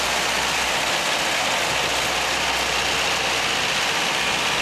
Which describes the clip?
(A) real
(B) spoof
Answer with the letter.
A